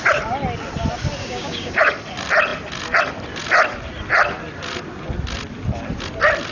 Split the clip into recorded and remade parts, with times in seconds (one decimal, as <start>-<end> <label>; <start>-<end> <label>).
0.0-1.2 recorded; 1.2-1.8 remade; 1.8-6.5 recorded